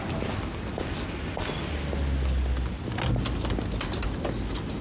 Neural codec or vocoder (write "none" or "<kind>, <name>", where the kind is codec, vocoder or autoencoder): none